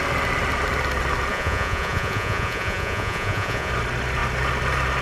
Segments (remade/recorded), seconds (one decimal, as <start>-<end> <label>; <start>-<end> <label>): 0.0-1.3 recorded; 1.3-3.7 remade; 3.7-5.0 recorded